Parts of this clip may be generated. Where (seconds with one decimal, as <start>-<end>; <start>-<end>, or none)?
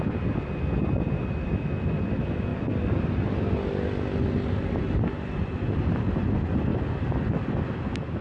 0.0-2.5; 6.2-6.7